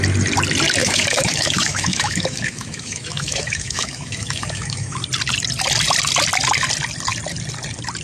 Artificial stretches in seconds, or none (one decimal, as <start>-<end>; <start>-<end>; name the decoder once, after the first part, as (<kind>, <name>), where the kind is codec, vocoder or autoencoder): 0.8-5.0 (autoencoder, DAC-VAE)